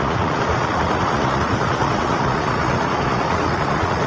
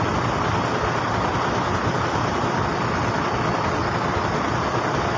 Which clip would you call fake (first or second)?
first